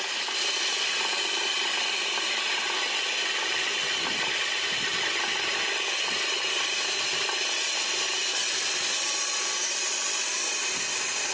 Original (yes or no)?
yes